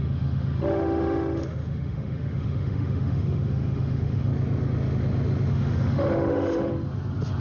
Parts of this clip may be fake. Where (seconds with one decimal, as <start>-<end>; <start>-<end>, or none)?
0.0-4.3; 5.5-6.7